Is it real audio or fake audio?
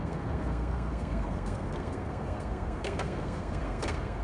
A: fake